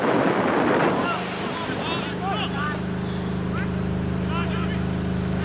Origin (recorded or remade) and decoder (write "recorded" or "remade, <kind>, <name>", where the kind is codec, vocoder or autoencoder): recorded